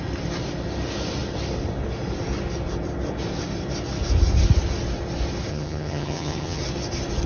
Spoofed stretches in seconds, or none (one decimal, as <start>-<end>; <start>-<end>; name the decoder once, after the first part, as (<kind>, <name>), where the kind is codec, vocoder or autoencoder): 5.5-6.6 (vocoder, HiFi-GAN)